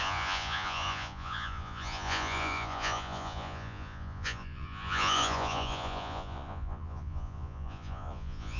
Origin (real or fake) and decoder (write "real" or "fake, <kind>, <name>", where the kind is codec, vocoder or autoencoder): fake, vocoder, Vocos